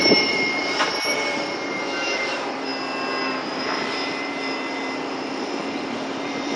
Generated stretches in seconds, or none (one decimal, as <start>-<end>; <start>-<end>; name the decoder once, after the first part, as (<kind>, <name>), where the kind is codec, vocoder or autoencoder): 0.0-2.7 (vocoder, BigVGAN v2); 3.6-6.6

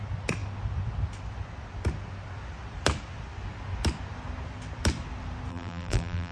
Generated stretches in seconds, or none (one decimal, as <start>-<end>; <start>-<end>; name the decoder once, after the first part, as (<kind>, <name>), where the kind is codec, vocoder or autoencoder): 5.5-6.3 (vocoder, BigVGAN v2)

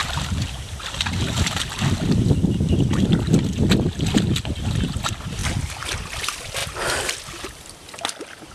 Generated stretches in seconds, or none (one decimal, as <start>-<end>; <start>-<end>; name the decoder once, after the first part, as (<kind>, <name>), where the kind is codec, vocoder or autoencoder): 0.0-1.7 (vocoder, BigVGAN v2)